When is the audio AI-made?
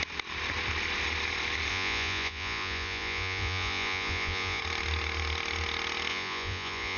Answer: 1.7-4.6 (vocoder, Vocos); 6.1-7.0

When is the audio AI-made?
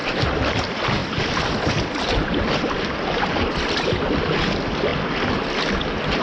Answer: none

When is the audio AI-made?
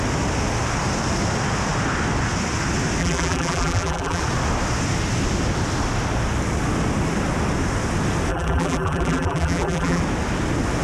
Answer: 3.0-4.2 (vocoder, BigVGAN v2); 8.3-10.0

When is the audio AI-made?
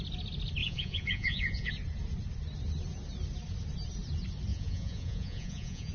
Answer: 0.6-1.7 (vocoder, Vocos); 4.5-5.9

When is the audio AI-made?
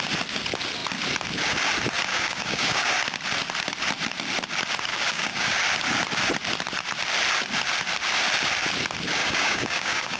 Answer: 2.1-2.9 (codec, DAC); 4.9-5.5; 9.2-10.2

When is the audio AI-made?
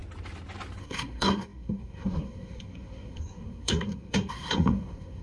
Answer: 0.8-5.2 (codec, SNAC)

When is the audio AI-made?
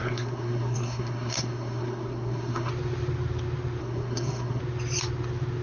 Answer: 0.0-2.7 (codec, SNAC); 3.8-4.6